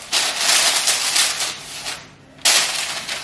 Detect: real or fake real